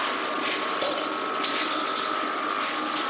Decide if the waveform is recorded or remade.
recorded